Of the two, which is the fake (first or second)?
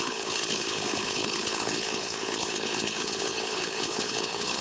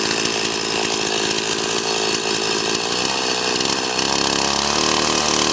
first